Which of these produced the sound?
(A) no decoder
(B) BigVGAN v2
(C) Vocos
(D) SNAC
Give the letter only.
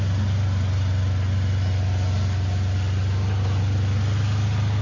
A